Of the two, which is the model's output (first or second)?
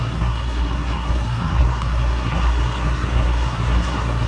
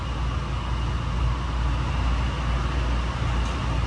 first